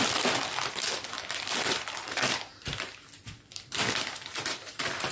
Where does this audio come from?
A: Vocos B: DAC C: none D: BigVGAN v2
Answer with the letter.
D